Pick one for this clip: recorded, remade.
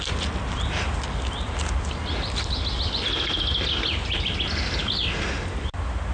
recorded